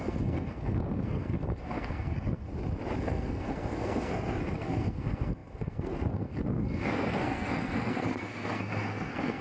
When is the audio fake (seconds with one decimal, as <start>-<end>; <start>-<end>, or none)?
0.0-2.5; 3.0-9.4